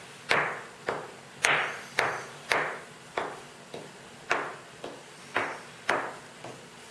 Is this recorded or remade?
recorded